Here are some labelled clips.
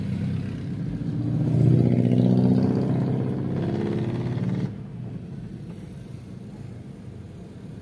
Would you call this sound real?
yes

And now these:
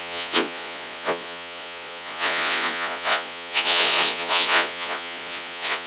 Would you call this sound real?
no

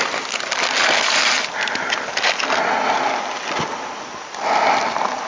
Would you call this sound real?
yes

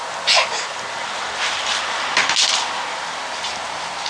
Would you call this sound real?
yes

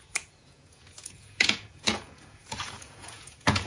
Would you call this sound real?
no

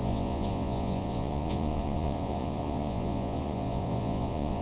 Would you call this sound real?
no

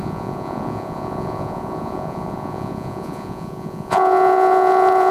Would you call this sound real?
no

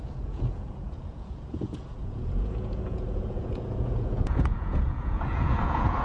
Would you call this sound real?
no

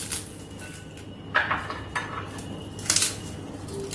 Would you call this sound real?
yes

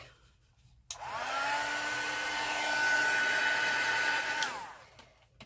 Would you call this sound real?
yes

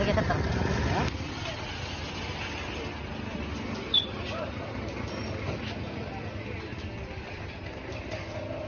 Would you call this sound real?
yes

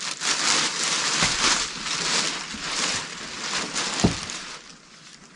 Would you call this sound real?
yes